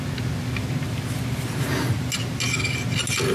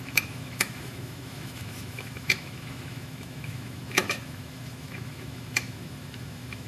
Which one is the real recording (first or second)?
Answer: first